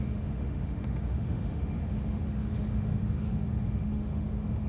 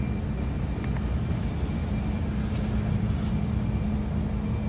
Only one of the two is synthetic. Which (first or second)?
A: first